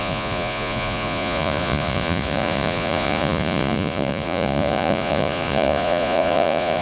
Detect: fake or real fake